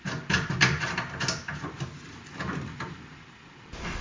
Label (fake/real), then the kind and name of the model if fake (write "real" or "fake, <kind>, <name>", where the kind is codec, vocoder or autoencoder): real